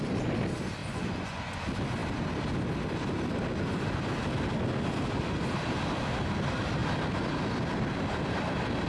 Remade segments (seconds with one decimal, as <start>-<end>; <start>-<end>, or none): 0.8-1.6